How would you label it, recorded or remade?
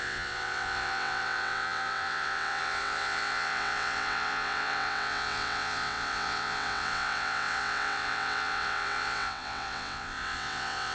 remade